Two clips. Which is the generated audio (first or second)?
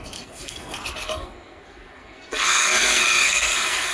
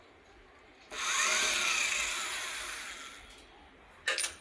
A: first